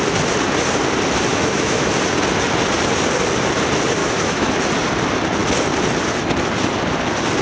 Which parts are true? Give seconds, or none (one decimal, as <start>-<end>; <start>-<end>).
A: 0.0-1.3; 1.9-4.0; 4.5-7.4